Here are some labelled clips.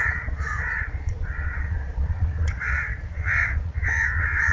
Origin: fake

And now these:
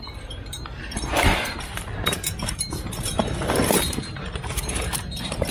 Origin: fake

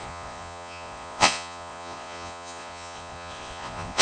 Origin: fake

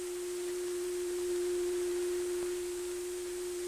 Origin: real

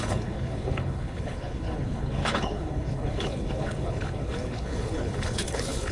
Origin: fake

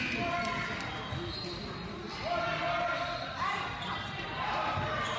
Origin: real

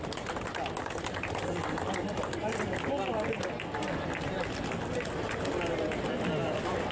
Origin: real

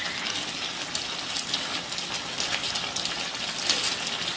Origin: real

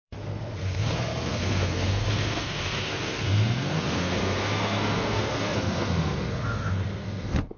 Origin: fake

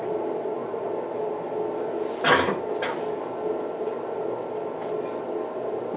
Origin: real